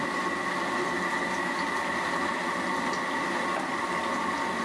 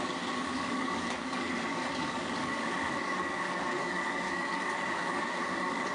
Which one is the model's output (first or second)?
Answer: second